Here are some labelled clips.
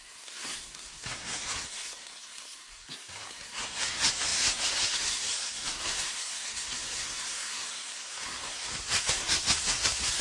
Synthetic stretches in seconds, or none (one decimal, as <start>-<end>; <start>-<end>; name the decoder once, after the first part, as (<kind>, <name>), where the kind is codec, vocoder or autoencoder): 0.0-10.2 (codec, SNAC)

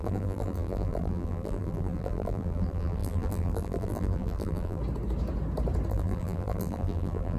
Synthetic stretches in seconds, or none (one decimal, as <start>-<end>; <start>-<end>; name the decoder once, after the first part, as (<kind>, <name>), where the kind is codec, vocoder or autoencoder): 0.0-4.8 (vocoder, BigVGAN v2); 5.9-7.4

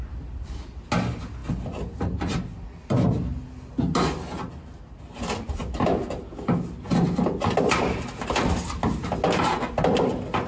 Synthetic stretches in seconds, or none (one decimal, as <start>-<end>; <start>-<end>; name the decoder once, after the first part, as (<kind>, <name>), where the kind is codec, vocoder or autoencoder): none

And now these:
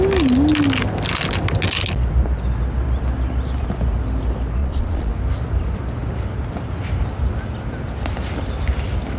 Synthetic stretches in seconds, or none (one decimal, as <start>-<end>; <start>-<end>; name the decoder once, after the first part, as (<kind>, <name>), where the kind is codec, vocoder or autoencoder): 4.6-5.1 (vocoder, Vocos)

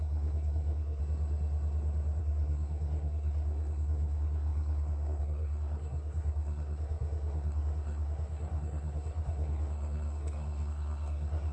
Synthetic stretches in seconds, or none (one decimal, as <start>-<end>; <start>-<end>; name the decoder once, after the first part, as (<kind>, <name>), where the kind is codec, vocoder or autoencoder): 0.0-1.0 (codec, SNAC); 2.2-11.5